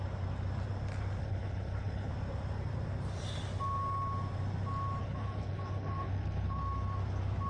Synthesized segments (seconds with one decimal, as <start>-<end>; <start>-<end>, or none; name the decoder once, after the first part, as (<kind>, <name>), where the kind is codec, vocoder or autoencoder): 1.2-2.1 (codec, HILCodec); 5.0-6.6